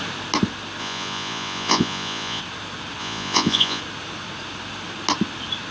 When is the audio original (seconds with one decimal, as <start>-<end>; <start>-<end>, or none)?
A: 0.0-0.8; 2.4-3.0; 3.8-5.7